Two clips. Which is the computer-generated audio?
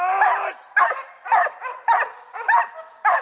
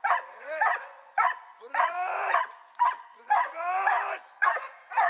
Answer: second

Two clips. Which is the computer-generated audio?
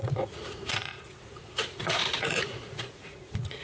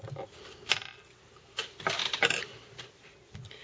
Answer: first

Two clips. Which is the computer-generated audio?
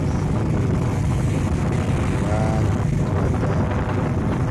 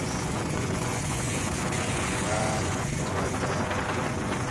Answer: second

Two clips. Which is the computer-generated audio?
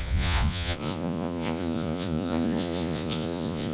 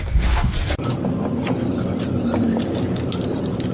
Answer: first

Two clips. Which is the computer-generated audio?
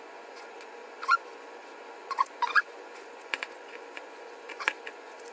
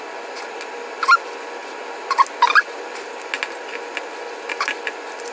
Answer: first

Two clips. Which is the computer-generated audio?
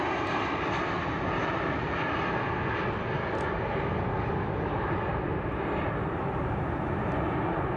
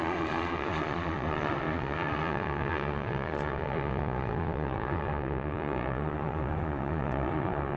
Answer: second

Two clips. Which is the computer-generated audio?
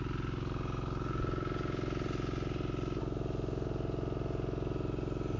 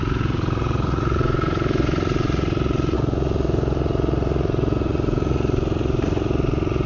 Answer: second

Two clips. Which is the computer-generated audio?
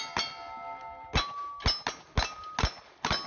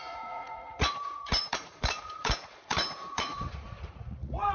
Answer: second